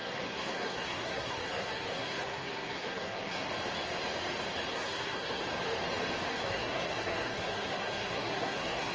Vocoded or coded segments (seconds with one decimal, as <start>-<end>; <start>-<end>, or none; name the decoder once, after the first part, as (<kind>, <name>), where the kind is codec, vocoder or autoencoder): 0.0-3.5 (codec, SNAC); 4.7-5.4; 6.3-8.9